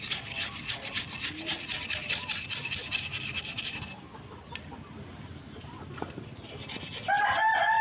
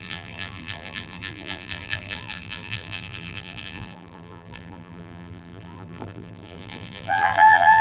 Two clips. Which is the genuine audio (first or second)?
first